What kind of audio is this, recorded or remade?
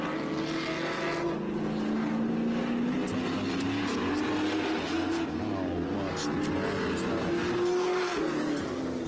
recorded